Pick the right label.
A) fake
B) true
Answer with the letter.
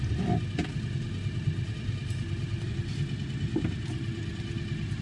B